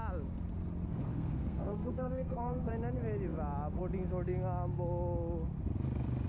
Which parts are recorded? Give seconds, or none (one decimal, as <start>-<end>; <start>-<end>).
0.0-1.1; 2.7-6.3